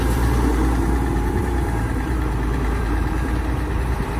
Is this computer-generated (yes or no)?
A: yes